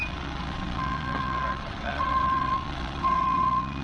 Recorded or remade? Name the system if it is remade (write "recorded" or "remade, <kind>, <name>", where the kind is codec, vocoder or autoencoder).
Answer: remade, vocoder, WaveNeXt